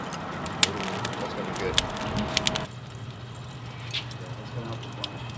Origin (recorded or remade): recorded